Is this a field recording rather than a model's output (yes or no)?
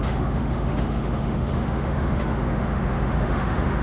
no